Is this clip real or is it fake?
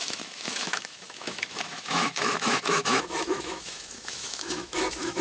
fake